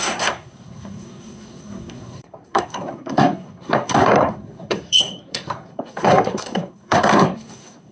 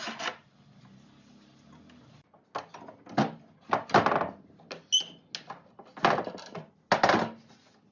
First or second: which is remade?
first